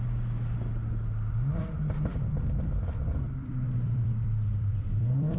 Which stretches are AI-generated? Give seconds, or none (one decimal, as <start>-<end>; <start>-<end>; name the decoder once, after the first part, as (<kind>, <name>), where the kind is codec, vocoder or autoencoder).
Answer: 2.1-5.4 (vocoder, BigVGAN v2)